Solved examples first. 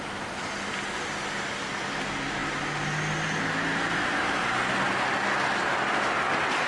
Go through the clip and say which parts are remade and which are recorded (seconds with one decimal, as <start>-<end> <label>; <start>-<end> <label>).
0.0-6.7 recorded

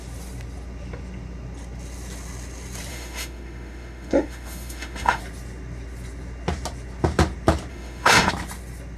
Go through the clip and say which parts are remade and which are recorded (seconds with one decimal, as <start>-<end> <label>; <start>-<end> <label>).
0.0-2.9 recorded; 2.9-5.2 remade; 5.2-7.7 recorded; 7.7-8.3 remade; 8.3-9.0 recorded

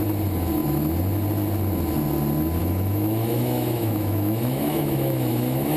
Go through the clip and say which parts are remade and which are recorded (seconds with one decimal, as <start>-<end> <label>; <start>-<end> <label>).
0.0-2.6 recorded; 2.6-5.8 remade

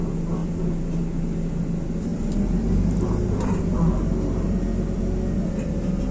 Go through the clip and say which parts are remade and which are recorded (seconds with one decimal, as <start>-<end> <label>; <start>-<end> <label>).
0.0-6.1 recorded

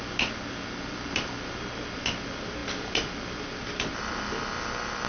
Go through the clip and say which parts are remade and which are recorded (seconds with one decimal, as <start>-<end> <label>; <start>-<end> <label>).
0.0-5.1 recorded

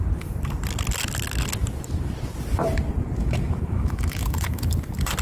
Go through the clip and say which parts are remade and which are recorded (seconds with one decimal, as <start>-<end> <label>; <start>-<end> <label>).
0.0-3.2 recorded; 3.2-4.7 remade; 4.7-5.2 recorded